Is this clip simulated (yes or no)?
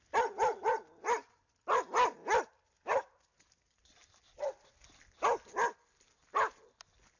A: no